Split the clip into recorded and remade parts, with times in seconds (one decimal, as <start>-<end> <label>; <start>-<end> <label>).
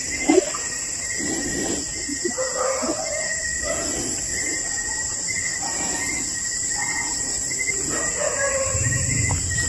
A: 0.0-9.7 remade